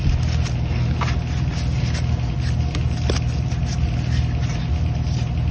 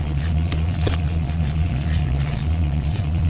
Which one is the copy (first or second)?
second